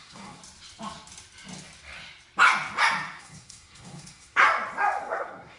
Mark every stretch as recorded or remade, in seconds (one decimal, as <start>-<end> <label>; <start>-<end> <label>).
0.0-0.4 remade; 0.4-3.2 recorded; 3.2-4.4 remade; 4.4-5.0 recorded; 5.0-5.6 remade